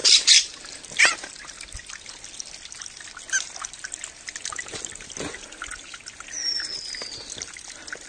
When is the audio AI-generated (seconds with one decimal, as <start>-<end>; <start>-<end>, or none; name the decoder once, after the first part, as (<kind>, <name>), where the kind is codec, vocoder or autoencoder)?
0.0-2.5 (vocoder, BigVGAN v2)